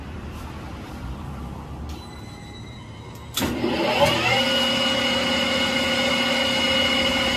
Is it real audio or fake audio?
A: real